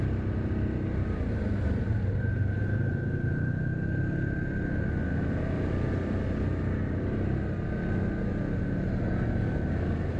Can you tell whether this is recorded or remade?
recorded